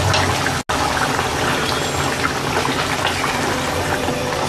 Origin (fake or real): real